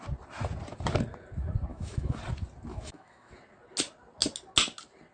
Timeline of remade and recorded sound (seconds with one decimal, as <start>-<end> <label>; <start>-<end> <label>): 0.0-1.7 recorded; 1.7-2.2 remade; 2.2-2.7 recorded; 2.7-3.3 remade; 3.3-5.1 recorded